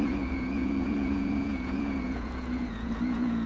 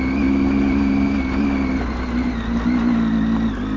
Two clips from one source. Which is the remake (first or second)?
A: first